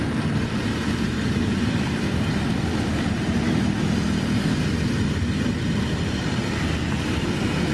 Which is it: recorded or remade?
recorded